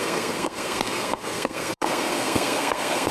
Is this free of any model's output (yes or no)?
no